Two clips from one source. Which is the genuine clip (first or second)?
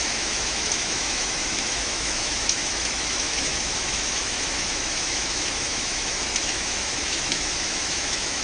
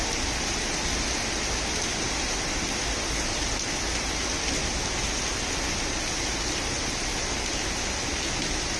second